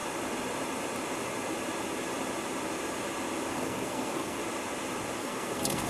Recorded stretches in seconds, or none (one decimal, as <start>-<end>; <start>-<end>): 0.0-3.5; 4.4-5.2